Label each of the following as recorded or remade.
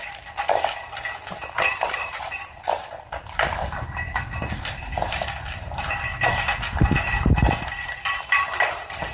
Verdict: remade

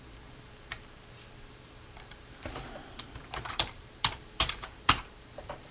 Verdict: remade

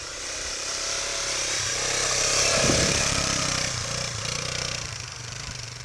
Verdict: remade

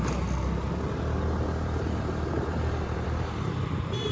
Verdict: remade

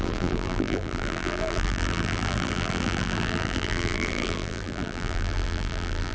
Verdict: remade